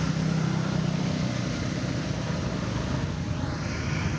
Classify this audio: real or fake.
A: real